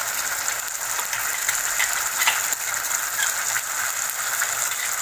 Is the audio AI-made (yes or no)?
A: no